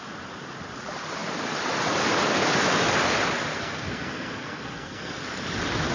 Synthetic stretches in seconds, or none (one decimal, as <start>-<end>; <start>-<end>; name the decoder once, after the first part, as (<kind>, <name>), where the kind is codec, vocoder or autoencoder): 3.5-5.2 (codec, SNAC)